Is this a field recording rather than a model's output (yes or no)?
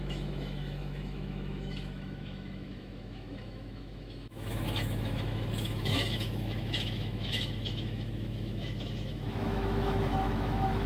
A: no